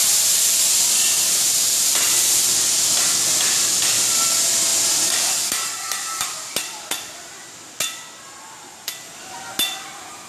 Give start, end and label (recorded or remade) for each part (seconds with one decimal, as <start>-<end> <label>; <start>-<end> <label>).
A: 0.0-10.3 recorded